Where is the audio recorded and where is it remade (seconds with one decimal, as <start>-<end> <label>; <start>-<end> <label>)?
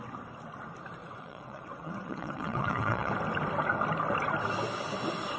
0.0-1.0 recorded; 1.0-3.1 remade; 3.1-5.4 recorded